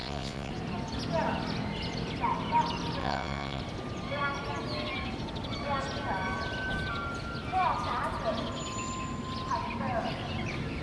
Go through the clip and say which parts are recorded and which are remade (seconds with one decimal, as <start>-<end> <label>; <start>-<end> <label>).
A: 0.0-0.5 remade; 0.5-3.0 recorded; 3.0-3.6 remade; 3.6-10.8 recorded